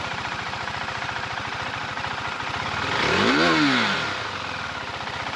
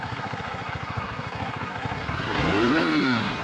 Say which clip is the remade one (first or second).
second